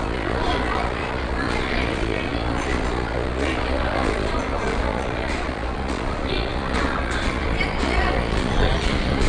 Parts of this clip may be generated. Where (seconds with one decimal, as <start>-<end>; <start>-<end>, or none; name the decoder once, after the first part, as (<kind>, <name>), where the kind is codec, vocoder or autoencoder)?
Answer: 0.0-9.3 (vocoder, Vocos)